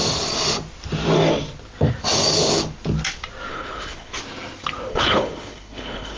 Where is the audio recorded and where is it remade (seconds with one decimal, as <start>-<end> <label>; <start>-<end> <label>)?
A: 0.0-3.5 recorded; 3.5-4.2 remade; 4.2-4.9 recorded; 4.9-6.2 remade